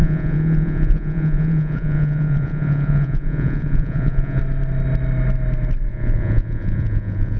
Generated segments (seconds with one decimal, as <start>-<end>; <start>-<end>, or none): 0.0-4.4; 5.9-7.4